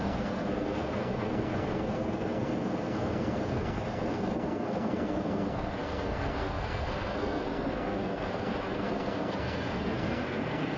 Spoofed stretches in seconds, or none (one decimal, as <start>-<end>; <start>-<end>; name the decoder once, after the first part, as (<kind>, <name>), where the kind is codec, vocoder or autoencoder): 0.0-10.8 (codec, SNAC)